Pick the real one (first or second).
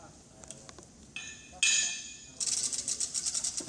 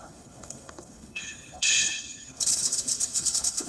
first